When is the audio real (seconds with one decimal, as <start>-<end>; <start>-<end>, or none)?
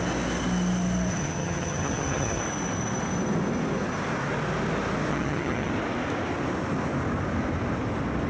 0.0-1.1; 2.4-5.1; 5.7-8.3